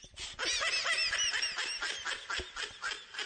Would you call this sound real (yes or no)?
yes